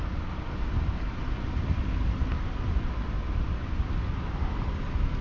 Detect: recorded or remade recorded